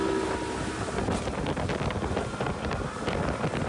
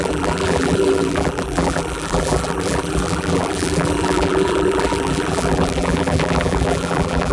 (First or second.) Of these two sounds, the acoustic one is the first